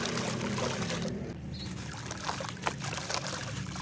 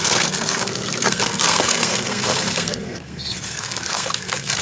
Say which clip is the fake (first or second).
second